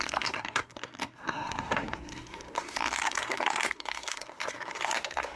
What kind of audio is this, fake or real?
fake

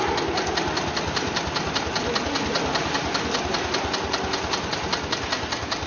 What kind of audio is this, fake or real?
real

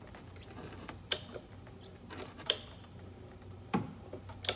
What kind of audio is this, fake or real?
real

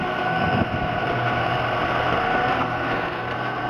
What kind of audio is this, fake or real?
fake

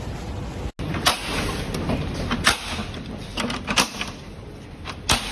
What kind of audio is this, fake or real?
real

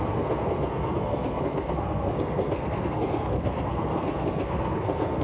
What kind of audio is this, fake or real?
fake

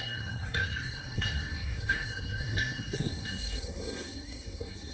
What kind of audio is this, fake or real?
fake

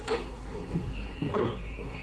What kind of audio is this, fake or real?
fake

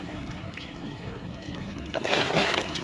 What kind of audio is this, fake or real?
fake